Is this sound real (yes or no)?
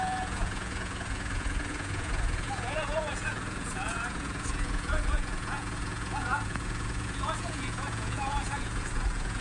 no